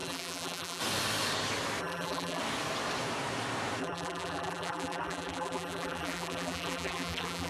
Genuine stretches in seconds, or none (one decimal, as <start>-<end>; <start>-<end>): 0.8-1.8; 2.4-3.8